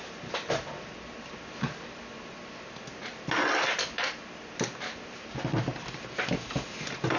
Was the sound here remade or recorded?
recorded